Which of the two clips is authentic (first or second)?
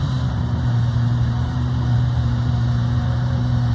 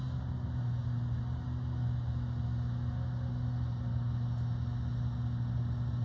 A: second